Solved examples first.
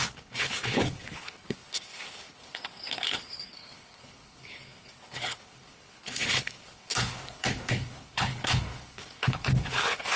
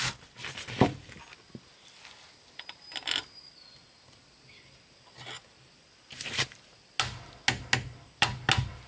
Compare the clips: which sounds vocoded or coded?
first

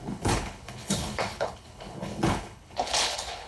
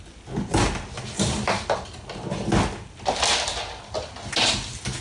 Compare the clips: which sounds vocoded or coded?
first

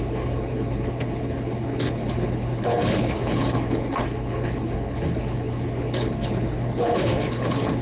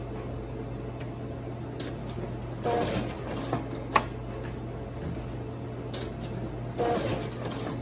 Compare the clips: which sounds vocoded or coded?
first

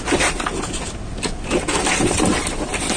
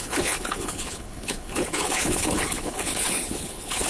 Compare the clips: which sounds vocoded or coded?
second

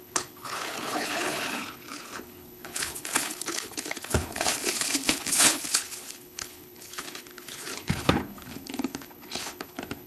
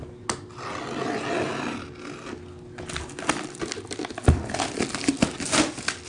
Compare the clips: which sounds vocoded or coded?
first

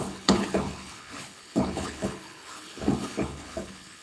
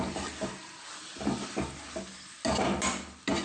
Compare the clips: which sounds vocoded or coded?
first